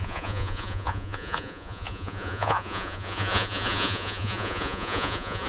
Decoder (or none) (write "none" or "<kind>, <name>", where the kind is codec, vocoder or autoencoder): vocoder, Vocos